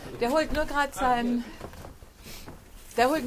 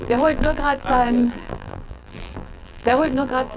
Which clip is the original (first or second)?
first